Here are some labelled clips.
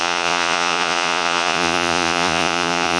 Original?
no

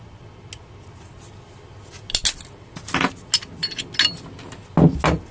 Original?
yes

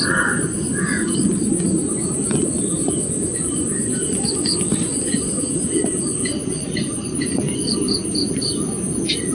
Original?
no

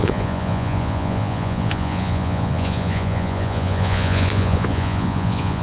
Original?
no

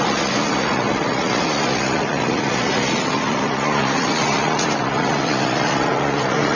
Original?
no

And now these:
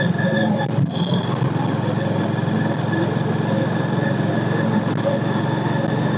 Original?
yes